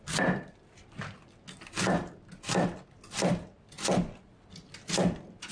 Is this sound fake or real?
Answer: real